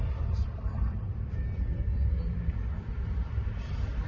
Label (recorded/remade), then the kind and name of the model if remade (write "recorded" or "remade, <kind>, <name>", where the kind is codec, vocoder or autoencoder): remade, vocoder, BigVGAN v2